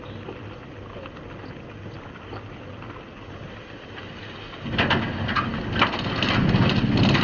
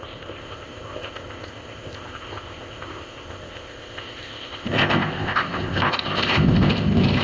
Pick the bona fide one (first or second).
first